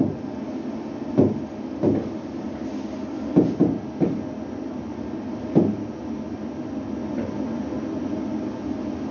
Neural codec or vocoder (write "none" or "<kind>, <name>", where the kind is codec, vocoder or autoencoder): none